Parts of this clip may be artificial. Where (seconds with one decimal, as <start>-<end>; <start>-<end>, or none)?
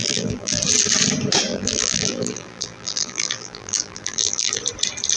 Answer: 0.0-0.6; 1.5-4.6